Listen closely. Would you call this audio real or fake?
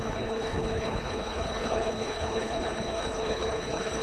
fake